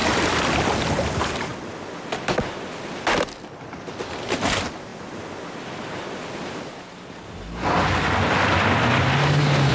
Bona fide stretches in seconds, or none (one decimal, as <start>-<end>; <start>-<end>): 0.0-9.7